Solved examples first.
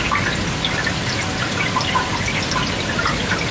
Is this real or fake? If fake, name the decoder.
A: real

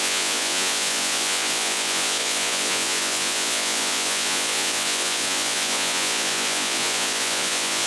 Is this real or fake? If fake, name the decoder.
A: fake, vocoder, Vocos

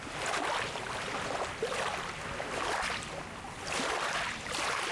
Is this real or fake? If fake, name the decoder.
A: real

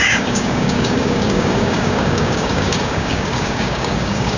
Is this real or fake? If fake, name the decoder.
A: fake, codec, DAC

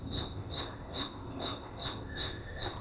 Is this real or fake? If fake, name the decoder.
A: fake, codec, ZipCodec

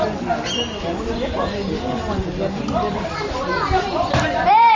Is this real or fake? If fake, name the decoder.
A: real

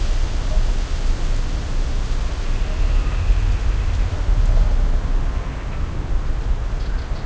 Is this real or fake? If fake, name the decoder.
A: real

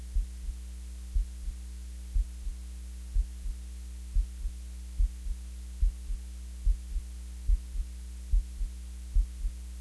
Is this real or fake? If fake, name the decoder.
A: real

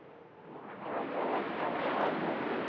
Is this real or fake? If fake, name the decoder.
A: real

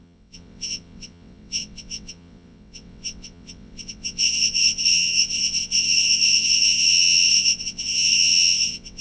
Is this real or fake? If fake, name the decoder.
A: fake, vocoder, WaveNeXt